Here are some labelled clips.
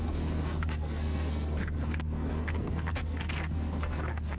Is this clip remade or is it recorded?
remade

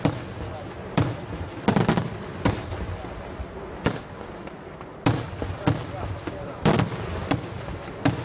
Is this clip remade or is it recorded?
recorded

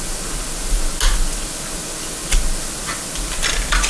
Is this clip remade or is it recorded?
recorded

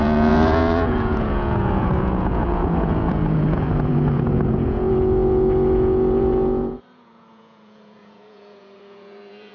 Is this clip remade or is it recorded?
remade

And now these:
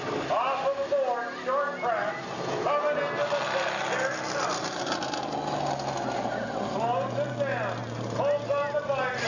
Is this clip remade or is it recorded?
recorded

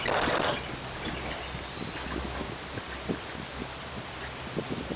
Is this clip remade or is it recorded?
recorded